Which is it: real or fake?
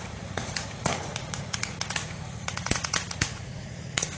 fake